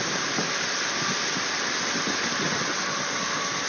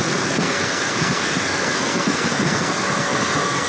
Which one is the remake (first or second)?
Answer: second